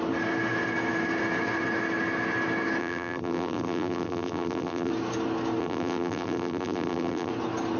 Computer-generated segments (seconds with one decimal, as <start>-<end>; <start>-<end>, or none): 2.8-4.9; 5.6-7.3